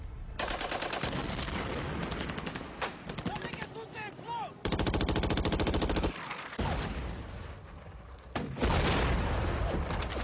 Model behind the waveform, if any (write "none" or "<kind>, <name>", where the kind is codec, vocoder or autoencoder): none